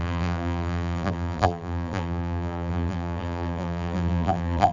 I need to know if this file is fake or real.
fake